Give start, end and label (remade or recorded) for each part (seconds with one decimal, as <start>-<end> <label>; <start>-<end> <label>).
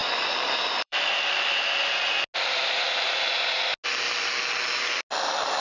0.0-2.2 remade; 2.2-5.6 recorded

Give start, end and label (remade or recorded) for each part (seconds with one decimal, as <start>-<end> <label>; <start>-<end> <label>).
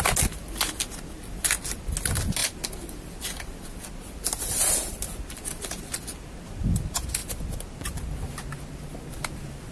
0.0-9.7 recorded